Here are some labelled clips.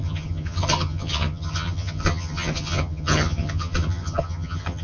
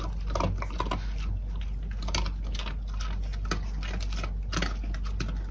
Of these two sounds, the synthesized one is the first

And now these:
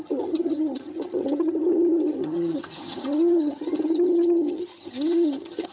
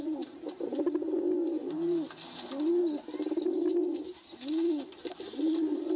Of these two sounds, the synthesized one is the first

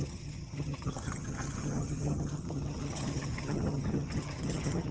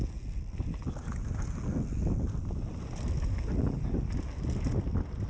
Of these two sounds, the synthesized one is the first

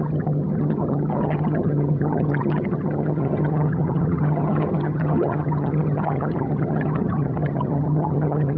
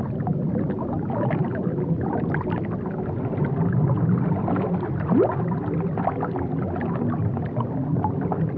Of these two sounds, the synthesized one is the first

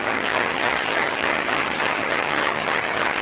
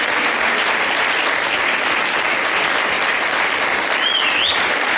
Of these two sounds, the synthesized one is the first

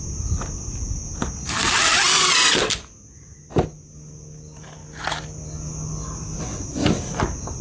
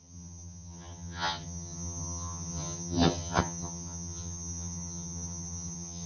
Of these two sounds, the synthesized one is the second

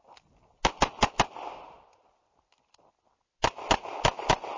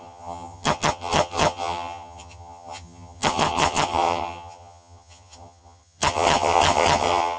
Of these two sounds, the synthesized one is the second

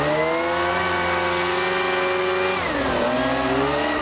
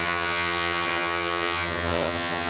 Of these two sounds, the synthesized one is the second